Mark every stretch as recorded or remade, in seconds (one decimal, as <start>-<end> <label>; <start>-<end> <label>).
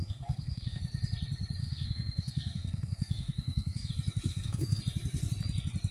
0.0-0.8 remade; 0.8-1.6 recorded; 1.6-3.9 remade; 3.9-4.3 recorded; 4.3-4.8 remade; 4.8-5.9 recorded